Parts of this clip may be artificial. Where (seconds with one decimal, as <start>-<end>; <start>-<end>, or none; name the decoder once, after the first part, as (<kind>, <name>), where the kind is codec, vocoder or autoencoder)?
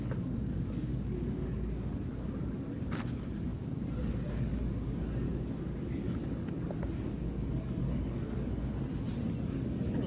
0.0-8.7 (codec, DAC); 9.5-10.1